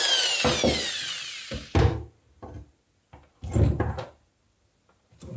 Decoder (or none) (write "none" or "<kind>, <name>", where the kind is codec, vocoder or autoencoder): none